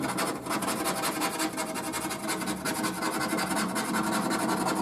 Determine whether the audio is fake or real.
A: real